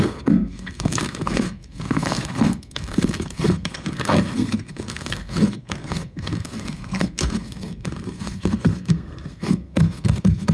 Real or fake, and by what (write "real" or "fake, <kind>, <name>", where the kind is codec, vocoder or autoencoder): fake, codec, SNAC